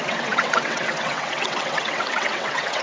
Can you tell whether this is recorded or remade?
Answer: remade